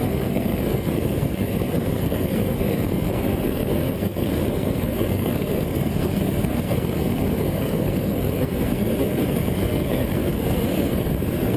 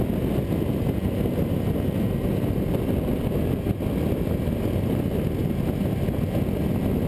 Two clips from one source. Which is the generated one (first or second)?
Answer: first